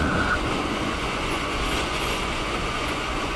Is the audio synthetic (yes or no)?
yes